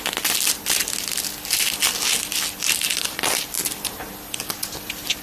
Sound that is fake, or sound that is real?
real